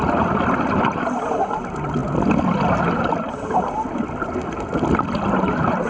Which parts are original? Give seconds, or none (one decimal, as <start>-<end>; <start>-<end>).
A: 0.0-5.9